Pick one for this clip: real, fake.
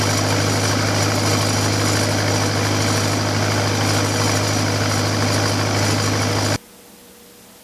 real